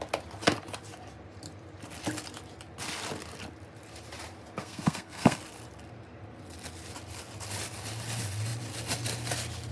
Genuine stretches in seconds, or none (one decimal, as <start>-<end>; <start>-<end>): 0.0-4.6; 5.4-9.7